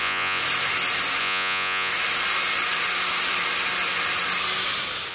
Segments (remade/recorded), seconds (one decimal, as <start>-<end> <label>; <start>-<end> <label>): 0.0-0.4 remade; 0.4-1.2 recorded; 1.2-1.9 remade; 1.9-5.1 recorded